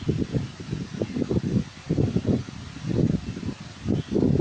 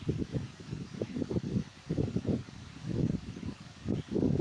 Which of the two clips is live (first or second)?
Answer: first